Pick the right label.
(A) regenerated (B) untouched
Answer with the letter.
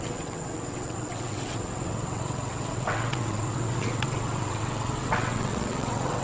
A